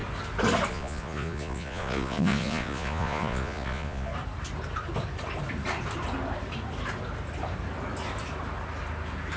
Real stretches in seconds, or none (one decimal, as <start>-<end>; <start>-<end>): 0.0-0.7; 4.1-9.4